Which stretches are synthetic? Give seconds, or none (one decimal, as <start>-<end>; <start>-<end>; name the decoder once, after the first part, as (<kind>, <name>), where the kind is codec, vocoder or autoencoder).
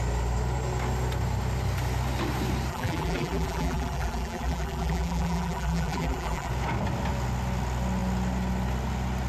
2.7-6.5 (vocoder, BigVGAN v2)